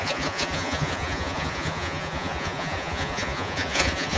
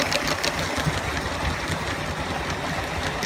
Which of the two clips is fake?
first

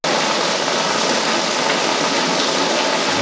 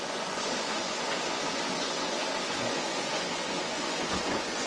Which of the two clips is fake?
second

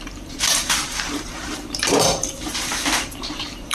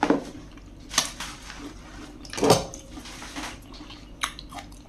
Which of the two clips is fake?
first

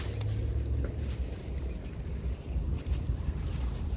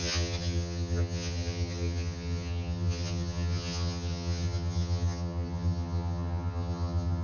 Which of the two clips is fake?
second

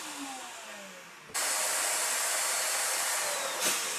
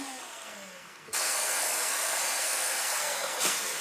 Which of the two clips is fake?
second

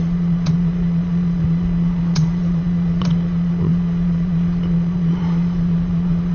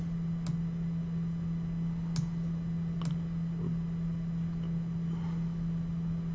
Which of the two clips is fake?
first